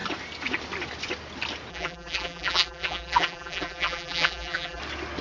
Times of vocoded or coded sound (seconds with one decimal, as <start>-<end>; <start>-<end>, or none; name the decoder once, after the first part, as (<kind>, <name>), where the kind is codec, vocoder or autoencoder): 1.7-4.8 (vocoder, BigVGAN v2)

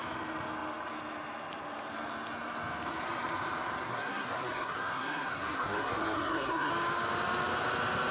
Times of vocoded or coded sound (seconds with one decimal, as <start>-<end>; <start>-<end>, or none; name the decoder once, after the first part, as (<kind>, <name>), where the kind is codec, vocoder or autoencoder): 3.9-6.7 (codec, SNAC)

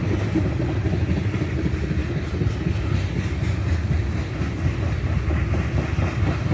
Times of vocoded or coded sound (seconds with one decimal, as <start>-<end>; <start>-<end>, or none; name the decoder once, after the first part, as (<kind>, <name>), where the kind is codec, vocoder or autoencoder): none

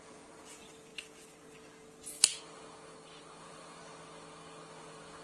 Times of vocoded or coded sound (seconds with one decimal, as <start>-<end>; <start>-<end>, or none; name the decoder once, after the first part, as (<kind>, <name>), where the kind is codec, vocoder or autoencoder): 0.0-0.9 (vocoder, Vocos); 3.4-3.8; 4.8-5.2

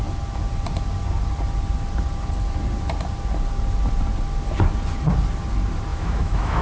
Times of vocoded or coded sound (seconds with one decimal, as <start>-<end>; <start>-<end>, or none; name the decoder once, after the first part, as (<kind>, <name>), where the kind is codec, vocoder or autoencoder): 5.9-6.6 (autoencoder, DAC-VAE)

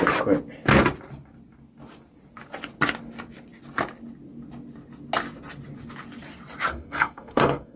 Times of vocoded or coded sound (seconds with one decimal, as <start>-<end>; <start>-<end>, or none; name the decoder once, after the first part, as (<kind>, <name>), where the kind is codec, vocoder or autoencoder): 6.7-7.8 (codec, SNAC)

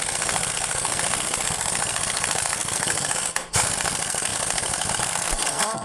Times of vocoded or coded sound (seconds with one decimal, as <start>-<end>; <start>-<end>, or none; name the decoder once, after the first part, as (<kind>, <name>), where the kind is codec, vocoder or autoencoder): 0.0-5.8 (codec, SNAC)

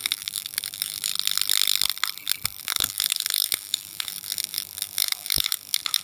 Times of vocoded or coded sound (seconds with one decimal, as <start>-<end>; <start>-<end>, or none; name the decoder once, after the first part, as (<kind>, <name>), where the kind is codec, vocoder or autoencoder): 0.0-1.1 (autoencoder, DAC-VAE); 2.6-6.0